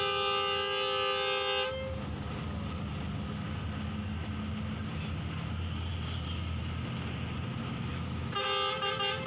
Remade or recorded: recorded